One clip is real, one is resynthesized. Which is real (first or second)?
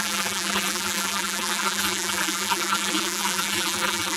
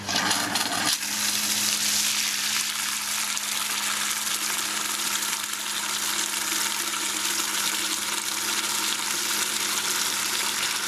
second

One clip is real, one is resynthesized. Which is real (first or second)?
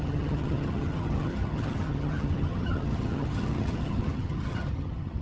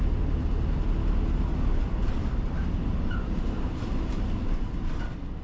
second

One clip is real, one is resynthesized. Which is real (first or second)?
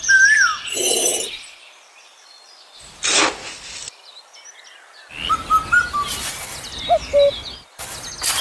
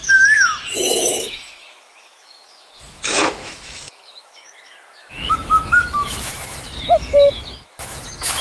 first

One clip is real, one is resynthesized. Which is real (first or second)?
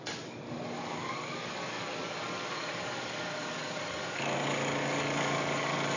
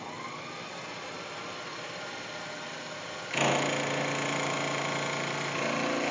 second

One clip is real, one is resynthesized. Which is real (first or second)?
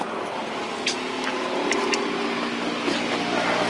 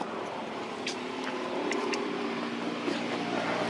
first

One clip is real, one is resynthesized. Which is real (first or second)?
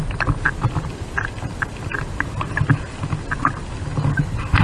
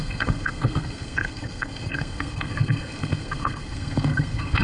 first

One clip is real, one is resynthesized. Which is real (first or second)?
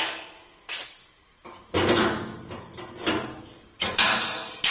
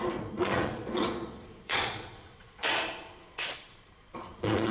first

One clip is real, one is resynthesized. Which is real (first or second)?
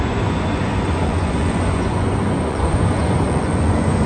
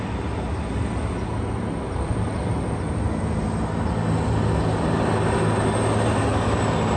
second